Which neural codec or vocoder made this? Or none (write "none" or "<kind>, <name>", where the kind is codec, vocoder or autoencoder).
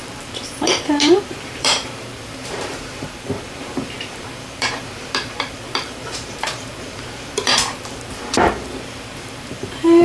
vocoder, BigVGAN v2